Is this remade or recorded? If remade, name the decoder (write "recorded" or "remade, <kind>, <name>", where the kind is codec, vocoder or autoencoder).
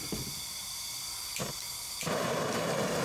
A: remade, vocoder, BigVGAN v2